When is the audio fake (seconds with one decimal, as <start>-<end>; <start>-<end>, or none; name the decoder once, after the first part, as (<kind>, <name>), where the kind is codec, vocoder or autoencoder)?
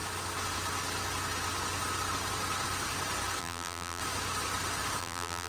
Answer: 3.4-4.0 (vocoder, BigVGAN v2); 5.0-5.5